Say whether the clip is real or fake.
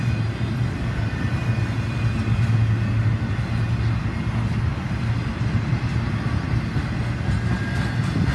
real